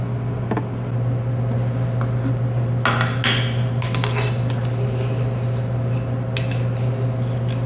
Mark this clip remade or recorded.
recorded